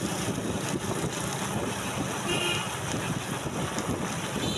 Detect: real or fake real